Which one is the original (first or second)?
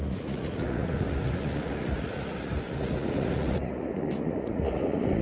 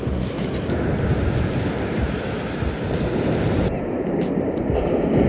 second